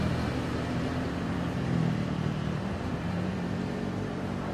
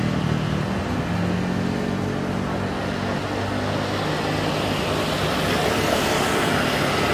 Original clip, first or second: second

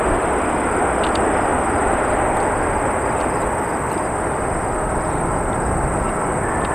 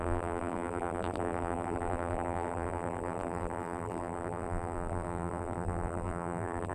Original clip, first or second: first